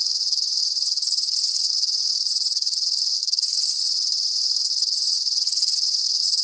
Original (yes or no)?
no